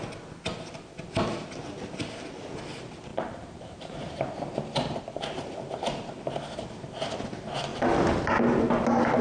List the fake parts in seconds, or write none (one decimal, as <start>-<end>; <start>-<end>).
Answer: 3.1-5.0